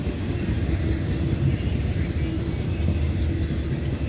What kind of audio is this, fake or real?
real